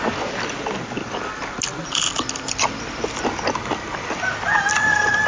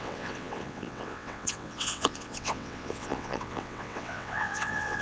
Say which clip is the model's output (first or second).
second